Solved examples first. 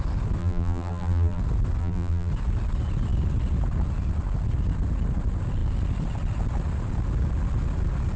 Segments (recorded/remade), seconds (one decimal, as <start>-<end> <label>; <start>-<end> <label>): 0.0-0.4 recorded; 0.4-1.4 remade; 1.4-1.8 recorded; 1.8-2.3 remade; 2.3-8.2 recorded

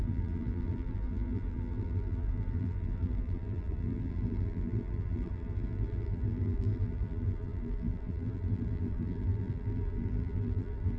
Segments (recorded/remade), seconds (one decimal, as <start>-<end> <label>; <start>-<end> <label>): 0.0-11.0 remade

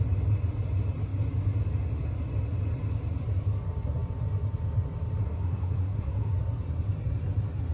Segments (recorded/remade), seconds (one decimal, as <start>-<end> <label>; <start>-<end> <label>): 0.0-5.2 recorded; 5.2-6.3 remade; 6.3-7.7 recorded

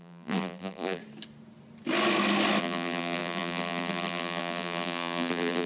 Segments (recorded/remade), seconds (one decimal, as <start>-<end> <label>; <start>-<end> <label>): 0.0-1.0 remade; 1.0-2.6 recorded; 2.6-5.7 remade

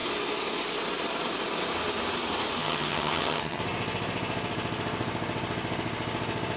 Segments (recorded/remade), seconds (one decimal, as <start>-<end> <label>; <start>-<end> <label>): 0.0-2.6 recorded; 2.6-3.6 remade; 3.6-6.6 recorded